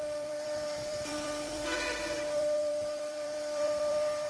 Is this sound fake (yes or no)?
yes